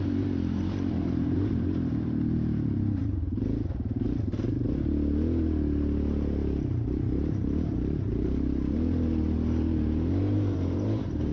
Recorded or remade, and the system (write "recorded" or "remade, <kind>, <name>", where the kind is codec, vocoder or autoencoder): remade, vocoder, BigVGAN v2